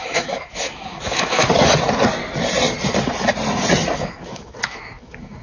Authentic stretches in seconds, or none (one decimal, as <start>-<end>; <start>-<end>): 1.4-4.0